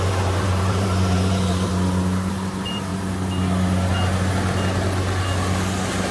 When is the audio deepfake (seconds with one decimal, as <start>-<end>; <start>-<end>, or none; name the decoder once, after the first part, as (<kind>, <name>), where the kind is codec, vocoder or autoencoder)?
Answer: 0.0-1.7 (vocoder, BigVGAN v2); 2.3-2.9